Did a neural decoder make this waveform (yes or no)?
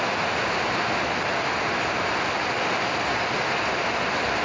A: no